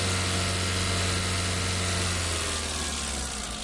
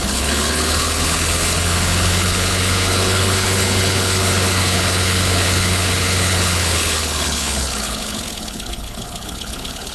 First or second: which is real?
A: first